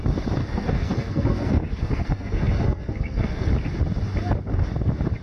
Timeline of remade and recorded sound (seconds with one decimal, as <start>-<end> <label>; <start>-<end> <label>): 0.0-0.4 recorded; 0.4-3.5 remade; 3.5-5.2 recorded